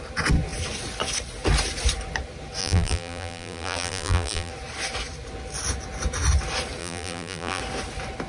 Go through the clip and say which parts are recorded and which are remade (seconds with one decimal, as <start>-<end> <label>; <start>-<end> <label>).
0.0-2.6 recorded; 2.6-4.5 remade; 4.5-6.8 recorded; 6.8-7.6 remade; 7.6-8.3 recorded